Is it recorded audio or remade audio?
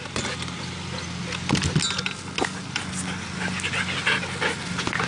recorded